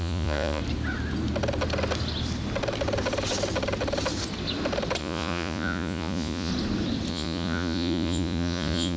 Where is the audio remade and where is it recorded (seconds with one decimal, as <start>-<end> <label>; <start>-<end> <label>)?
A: 0.0-0.6 remade; 0.6-5.0 recorded; 5.0-6.5 remade; 6.5-7.1 recorded; 7.1-9.0 remade